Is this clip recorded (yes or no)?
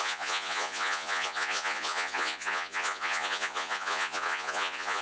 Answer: no